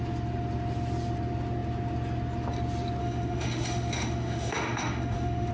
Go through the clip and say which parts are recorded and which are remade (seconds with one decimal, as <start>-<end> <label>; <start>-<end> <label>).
0.0-3.0 recorded; 3.0-5.5 remade